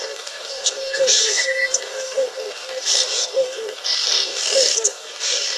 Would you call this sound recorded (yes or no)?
no